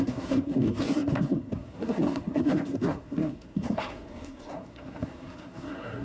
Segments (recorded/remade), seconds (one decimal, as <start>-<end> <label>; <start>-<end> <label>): 0.0-6.0 remade